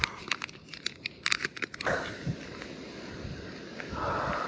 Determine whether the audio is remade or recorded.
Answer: recorded